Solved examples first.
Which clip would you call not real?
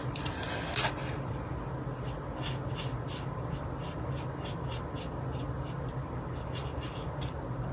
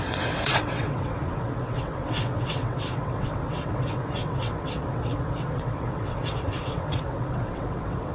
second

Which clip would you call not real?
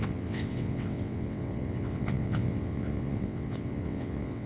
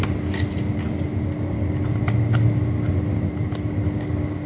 first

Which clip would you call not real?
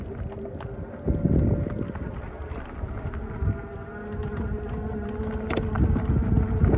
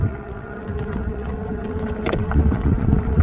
second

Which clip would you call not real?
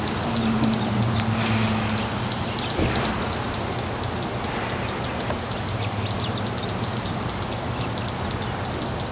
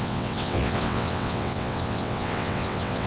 second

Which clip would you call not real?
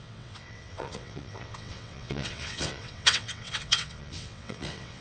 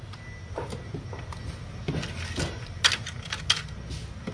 first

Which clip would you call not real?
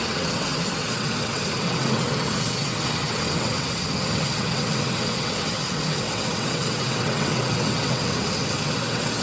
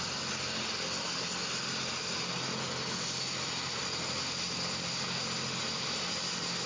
first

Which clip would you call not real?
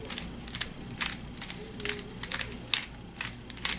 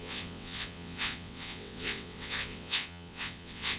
second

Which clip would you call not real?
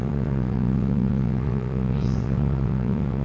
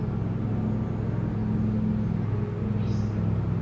first